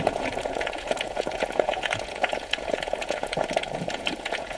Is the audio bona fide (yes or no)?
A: no